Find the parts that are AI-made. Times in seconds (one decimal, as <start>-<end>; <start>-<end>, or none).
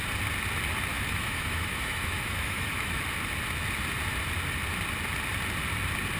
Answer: 0.9-3.0